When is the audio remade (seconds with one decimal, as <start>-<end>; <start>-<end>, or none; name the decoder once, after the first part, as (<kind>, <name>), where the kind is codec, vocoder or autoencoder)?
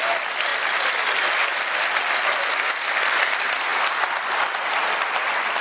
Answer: none